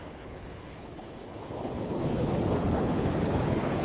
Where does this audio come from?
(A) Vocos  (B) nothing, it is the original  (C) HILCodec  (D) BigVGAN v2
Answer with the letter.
C